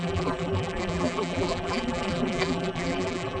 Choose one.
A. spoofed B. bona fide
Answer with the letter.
A